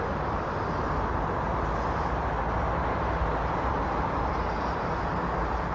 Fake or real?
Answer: real